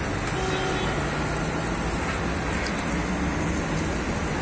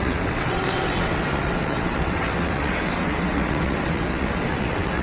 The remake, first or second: second